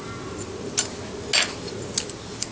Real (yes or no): yes